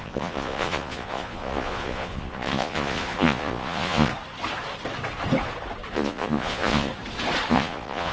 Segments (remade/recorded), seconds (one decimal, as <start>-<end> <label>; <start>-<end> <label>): 0.0-4.1 remade; 4.1-5.9 recorded; 5.9-6.9 remade; 6.9-7.5 recorded; 7.5-8.1 remade